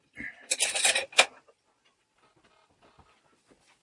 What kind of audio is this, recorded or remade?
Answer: recorded